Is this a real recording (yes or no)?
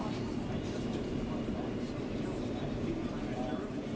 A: yes